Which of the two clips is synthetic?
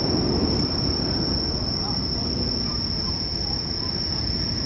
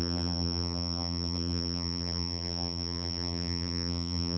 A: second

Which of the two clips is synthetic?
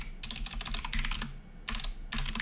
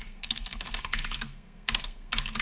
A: second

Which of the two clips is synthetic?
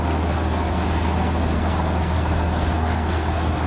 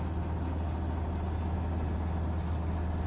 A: first